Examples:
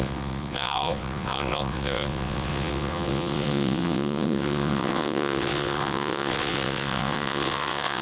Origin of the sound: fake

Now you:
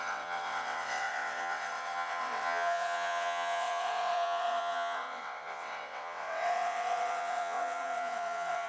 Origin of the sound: fake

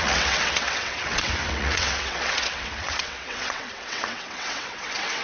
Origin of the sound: fake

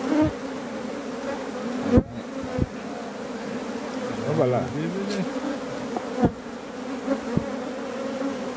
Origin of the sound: real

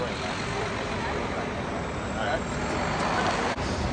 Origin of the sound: real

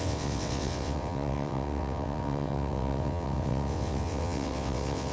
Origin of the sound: fake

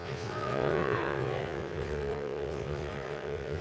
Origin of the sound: fake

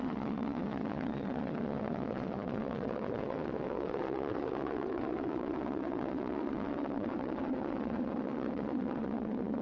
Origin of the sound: fake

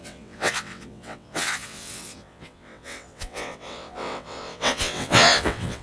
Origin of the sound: fake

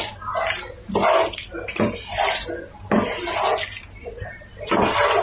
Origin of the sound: real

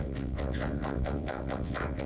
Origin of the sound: fake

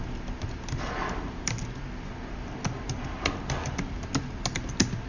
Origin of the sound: real